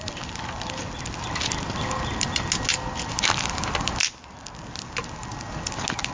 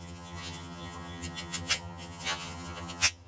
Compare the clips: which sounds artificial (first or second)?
second